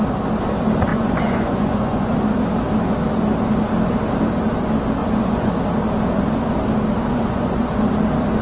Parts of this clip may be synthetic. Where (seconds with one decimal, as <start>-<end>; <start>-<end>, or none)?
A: 0.9-2.1; 5.0-5.5; 7.1-7.7